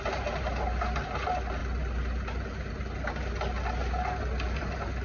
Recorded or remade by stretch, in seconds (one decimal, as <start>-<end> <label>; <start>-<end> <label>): 0.0-5.0 recorded